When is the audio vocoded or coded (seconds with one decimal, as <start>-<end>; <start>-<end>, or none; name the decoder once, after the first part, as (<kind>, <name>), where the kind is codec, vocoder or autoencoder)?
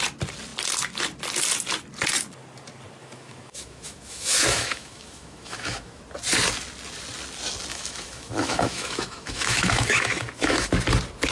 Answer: 3.0-6.0 (autoencoder, DAC-VAE); 7.7-10.7